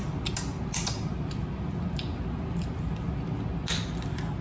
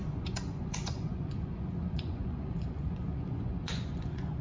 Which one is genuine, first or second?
first